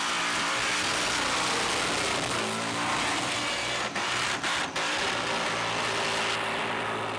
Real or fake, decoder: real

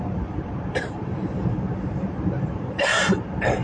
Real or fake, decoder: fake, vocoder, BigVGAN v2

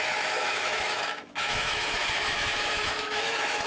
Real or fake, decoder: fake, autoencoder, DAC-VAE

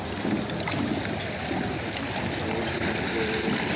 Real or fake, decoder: real